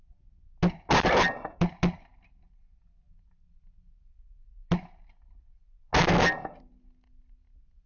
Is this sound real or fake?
real